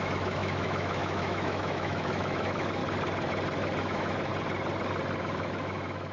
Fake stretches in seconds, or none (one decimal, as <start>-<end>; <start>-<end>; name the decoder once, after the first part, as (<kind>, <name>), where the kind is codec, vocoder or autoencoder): 0.0-2.8 (autoencoder, DAC-VAE); 3.8-4.3; 5.2-6.1